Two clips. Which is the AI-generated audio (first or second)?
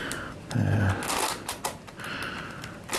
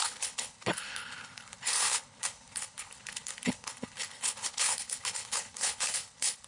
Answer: second